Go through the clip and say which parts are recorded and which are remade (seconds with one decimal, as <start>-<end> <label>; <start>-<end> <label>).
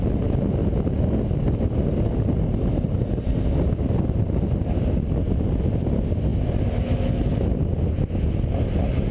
0.0-9.1 recorded